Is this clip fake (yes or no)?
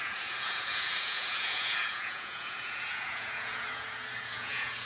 yes